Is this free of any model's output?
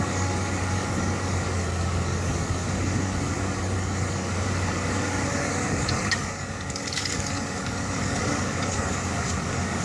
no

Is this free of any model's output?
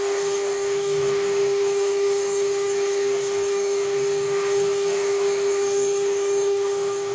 no